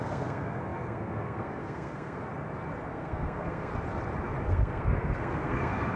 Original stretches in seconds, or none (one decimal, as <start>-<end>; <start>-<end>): 2.2-2.9; 3.7-4.4